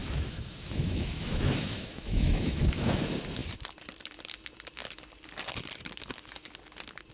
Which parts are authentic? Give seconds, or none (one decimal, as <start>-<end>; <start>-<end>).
3.0-7.1